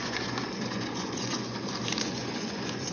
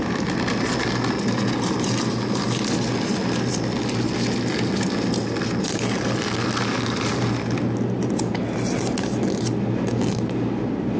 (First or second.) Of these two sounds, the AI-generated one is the first